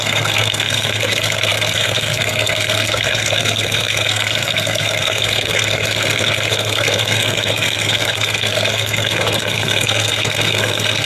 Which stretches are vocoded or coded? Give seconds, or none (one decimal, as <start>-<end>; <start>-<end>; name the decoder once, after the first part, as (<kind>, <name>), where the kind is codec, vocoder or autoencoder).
0.0-11.0 (codec, SNAC)